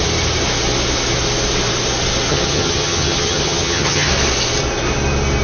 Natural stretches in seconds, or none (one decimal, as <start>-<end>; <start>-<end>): 0.0-2.3; 4.1-5.4